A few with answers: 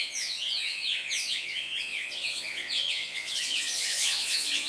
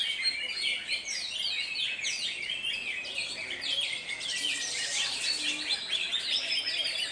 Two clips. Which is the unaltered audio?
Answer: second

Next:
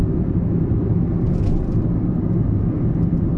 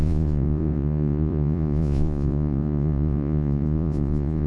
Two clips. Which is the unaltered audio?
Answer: first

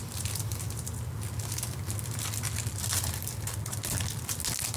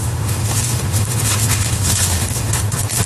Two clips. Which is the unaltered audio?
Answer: first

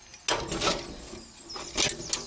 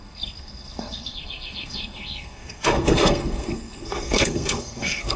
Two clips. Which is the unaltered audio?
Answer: first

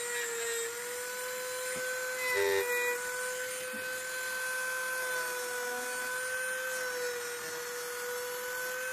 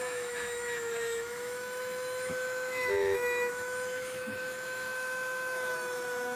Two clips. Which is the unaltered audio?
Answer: first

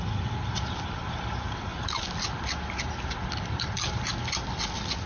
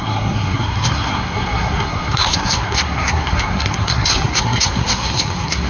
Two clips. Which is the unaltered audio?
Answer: first